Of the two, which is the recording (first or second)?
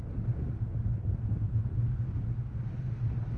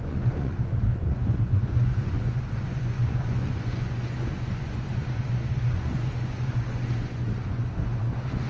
first